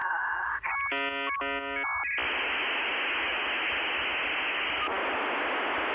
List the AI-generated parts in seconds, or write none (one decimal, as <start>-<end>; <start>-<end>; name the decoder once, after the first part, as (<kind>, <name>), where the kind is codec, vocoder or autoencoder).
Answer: 0.0-0.7 (codec, SNAC)